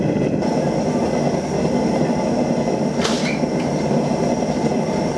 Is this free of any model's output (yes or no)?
yes